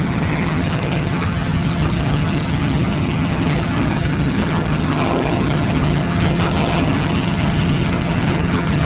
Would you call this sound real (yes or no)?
no